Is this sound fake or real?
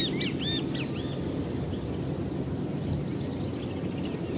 real